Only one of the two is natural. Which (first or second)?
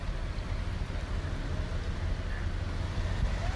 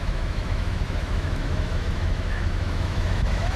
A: first